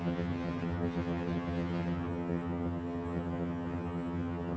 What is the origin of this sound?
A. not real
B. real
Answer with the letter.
A